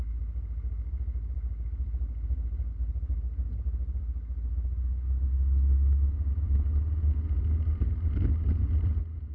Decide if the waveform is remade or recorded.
recorded